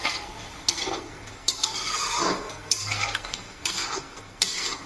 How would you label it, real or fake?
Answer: fake